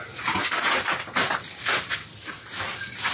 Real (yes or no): yes